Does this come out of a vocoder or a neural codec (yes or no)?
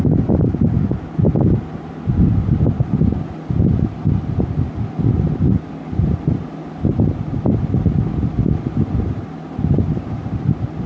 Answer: no